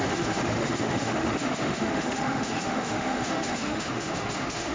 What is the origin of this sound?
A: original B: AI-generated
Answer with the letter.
B